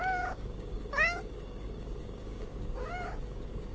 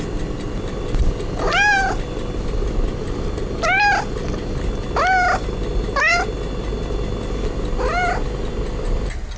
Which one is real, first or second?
second